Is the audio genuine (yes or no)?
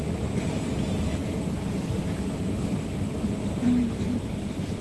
yes